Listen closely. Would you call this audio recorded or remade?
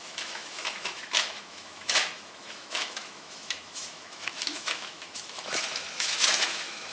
remade